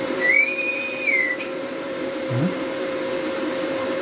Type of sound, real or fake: fake